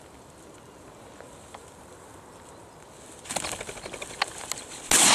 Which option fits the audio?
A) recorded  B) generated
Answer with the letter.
A